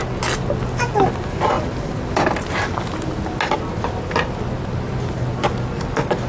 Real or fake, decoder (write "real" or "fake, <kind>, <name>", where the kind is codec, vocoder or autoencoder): real